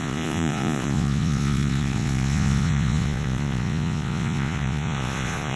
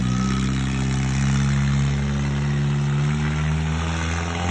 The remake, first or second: first